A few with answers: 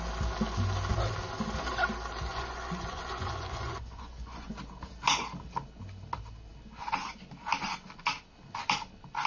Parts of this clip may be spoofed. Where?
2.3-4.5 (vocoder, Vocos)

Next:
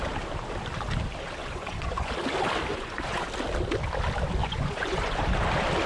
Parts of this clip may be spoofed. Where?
1.4-2.1 (vocoder, Vocos); 2.7-3.3; 4.4-5.2